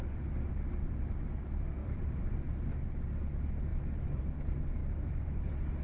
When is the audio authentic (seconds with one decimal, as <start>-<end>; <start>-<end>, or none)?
0.5-1.8; 2.5-4.8